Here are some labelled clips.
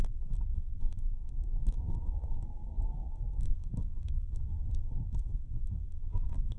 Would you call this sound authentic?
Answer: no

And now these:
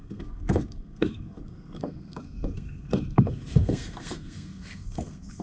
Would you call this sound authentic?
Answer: no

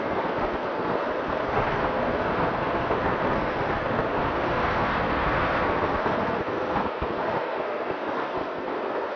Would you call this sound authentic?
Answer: no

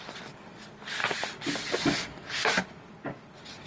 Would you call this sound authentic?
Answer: yes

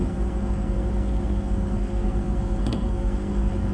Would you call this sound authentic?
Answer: no